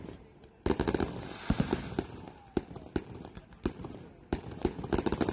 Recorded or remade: recorded